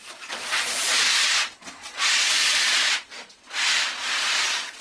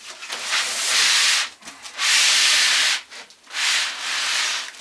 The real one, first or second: second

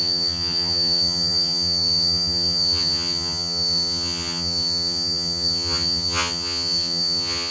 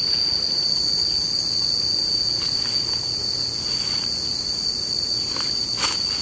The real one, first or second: second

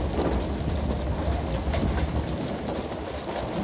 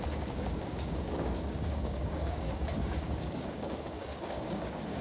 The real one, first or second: first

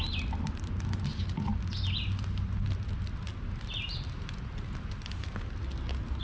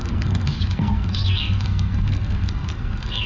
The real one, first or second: first